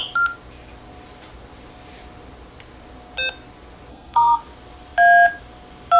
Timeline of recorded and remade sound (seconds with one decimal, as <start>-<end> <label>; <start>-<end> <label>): 0.0-3.9 recorded; 3.9-4.4 remade; 4.4-6.0 recorded